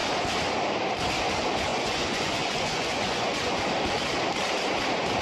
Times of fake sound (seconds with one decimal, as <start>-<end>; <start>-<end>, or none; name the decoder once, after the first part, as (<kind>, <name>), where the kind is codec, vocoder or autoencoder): 1.7-3.6 (vocoder, Vocos)